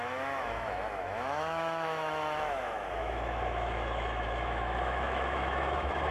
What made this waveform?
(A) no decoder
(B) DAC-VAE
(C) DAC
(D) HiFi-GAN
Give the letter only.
B